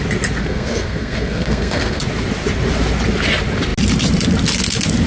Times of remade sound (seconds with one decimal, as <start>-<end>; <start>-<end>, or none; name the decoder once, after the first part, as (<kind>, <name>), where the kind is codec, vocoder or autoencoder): 0.4-2.0 (codec, SNAC)